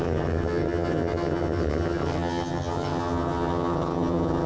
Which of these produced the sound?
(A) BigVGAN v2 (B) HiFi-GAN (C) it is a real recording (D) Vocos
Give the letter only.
B